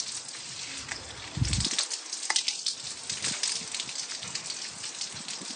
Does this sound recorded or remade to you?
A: recorded